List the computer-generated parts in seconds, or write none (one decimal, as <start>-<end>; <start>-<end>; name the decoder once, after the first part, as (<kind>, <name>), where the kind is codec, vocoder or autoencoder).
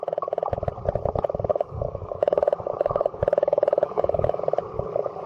1.5-4.4 (codec, DAC)